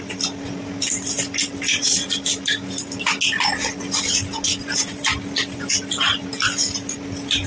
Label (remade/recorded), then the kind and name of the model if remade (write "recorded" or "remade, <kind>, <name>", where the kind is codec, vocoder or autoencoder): recorded